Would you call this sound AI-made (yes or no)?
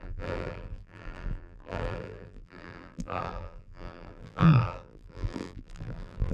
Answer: yes